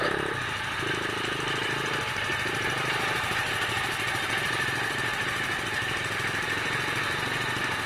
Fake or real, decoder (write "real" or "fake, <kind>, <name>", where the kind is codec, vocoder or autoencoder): real